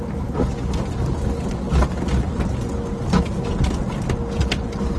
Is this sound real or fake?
real